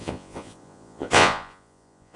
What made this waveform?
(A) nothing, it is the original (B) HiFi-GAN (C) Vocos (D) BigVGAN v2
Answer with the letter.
C